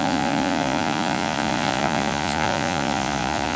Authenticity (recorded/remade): remade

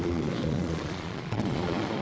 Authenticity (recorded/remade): remade